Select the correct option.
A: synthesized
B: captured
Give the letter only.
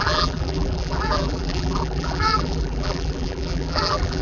A